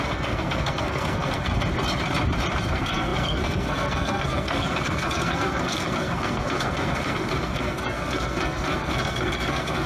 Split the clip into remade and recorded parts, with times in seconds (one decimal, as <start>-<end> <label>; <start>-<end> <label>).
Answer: 0.0-1.5 remade; 1.5-2.7 recorded; 2.7-9.9 remade